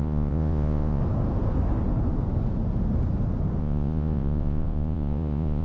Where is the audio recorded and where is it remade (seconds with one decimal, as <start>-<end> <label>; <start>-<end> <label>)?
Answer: 0.0-1.0 remade; 1.0-3.6 recorded; 3.6-5.6 remade